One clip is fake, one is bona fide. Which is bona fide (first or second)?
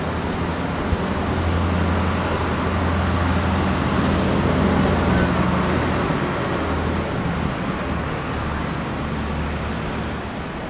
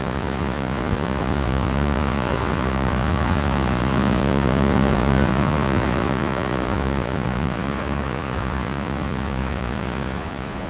first